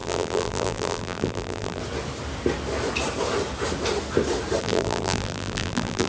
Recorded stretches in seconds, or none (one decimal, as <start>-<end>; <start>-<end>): 1.8-4.6